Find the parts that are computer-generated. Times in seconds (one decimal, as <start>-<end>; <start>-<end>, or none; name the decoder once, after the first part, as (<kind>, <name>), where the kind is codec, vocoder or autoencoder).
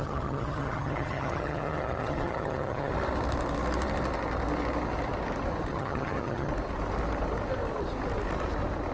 0.0-2.9 (vocoder, HiFi-GAN); 5.7-6.5